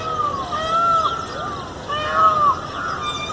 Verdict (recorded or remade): recorded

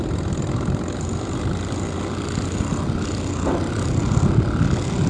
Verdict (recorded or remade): recorded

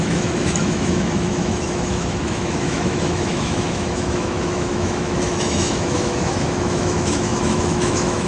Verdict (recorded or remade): remade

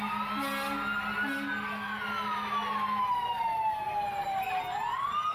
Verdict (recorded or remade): recorded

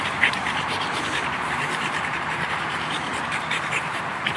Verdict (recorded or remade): remade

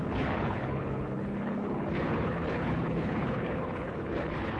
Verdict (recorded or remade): remade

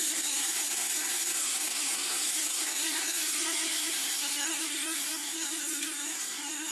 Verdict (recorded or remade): remade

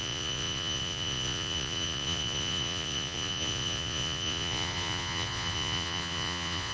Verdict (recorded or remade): remade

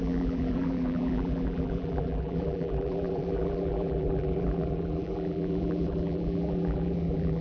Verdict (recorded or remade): remade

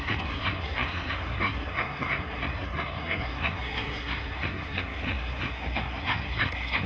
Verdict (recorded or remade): remade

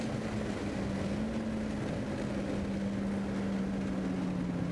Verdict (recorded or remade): recorded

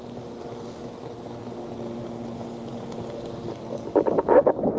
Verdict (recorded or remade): recorded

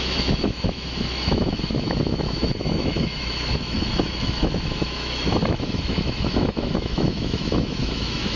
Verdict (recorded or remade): remade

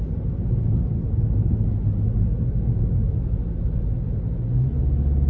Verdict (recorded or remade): recorded